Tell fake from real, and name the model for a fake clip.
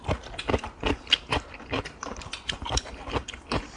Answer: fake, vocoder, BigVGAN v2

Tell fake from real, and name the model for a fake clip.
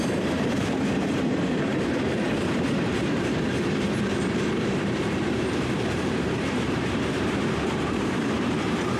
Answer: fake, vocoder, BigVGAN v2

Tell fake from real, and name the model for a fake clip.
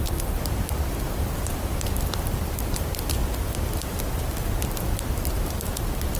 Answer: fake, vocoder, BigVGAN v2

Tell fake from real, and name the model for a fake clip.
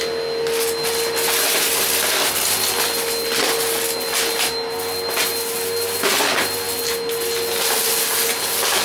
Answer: real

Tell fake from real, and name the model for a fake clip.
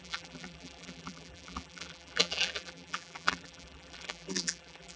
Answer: fake, vocoder, BigVGAN v2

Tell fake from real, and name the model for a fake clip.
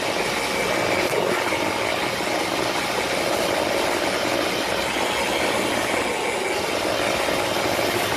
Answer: real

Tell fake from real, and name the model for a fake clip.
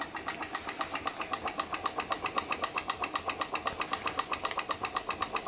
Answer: real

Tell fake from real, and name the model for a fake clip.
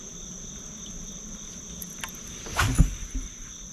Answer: real